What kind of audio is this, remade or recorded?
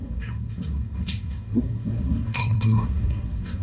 remade